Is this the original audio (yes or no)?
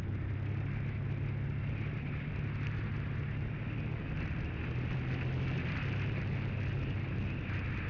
yes